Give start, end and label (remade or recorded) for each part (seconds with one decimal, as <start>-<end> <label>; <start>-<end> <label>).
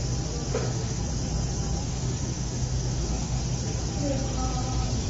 0.0-0.5 recorded; 0.5-1.0 remade; 1.0-1.8 recorded; 1.8-3.4 remade; 3.4-5.1 recorded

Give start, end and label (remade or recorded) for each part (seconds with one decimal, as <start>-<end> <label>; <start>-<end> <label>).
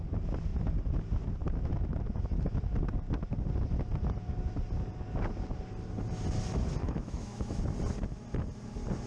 0.0-6.8 recorded; 6.8-7.6 remade; 7.6-9.1 recorded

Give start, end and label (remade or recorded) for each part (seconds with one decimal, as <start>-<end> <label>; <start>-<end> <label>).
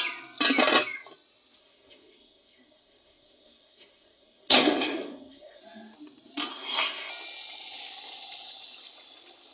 0.0-1.6 recorded; 1.6-5.6 remade; 5.6-6.5 recorded; 6.5-7.1 remade; 7.1-9.5 recorded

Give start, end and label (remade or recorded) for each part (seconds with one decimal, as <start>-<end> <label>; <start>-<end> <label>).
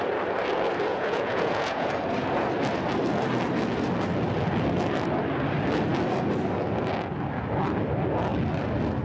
0.0-0.9 recorded; 0.9-1.9 remade; 1.9-9.0 recorded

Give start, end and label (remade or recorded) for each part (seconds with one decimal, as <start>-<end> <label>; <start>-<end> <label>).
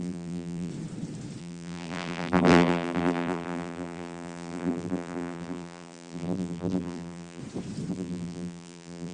0.0-0.7 remade; 0.7-1.4 recorded; 1.4-7.4 remade; 7.4-7.9 recorded; 7.9-9.1 remade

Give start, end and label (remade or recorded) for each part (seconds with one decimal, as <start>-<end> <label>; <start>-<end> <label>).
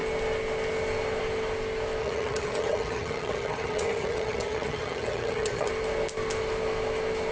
0.0-2.0 recorded; 2.0-5.7 remade; 5.7-7.3 recorded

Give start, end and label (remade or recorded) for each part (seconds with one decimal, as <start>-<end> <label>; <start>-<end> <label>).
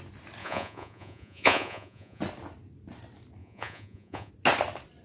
0.0-0.4 recorded; 0.4-2.2 remade; 2.2-3.4 recorded; 3.4-4.3 remade; 4.3-5.0 recorded